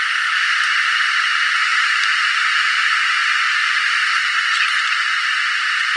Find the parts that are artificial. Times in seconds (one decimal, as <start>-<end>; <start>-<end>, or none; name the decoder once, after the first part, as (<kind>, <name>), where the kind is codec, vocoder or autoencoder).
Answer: 1.7-2.4 (vocoder, BigVGAN v2); 3.6-5.3